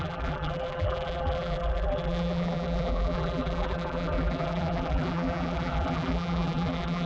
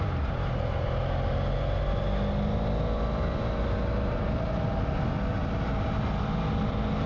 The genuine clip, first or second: second